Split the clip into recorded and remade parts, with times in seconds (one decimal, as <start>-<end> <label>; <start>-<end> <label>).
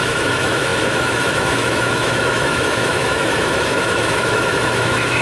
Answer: 0.0-5.2 remade